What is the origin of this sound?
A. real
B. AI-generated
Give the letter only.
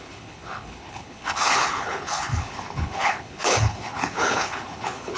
B